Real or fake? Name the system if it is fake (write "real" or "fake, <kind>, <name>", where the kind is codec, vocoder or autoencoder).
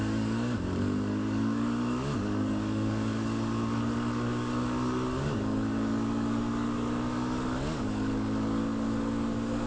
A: fake, codec, DAC